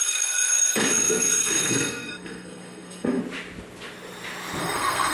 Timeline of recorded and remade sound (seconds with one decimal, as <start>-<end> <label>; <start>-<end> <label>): 0.0-3.2 remade; 3.2-4.6 recorded; 4.6-5.1 remade